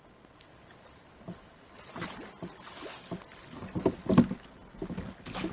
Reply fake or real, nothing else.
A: real